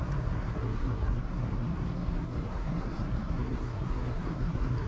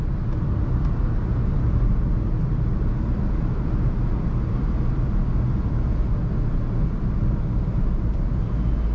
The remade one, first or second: first